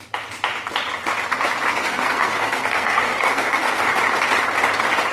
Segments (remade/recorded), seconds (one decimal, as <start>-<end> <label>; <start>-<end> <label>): 0.0-1.7 recorded; 1.7-3.8 remade; 3.8-5.1 recorded